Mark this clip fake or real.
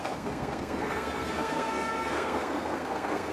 fake